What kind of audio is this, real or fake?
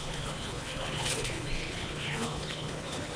fake